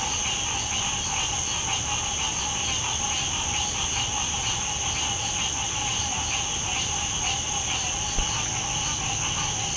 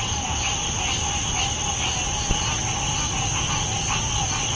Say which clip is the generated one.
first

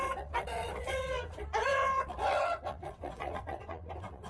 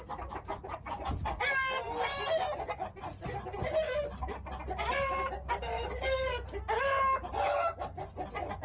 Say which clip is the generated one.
first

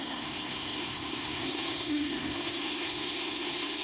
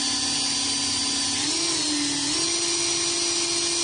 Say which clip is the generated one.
first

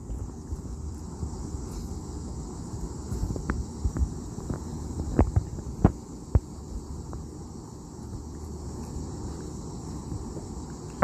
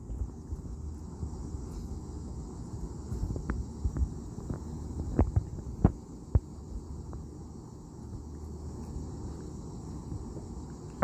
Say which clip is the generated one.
first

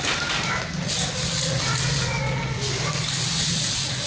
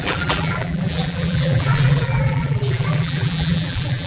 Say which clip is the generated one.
second